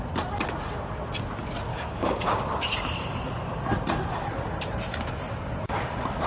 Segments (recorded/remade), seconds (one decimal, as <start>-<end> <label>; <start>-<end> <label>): 0.0-1.7 recorded; 1.7-2.4 remade; 2.4-6.3 recorded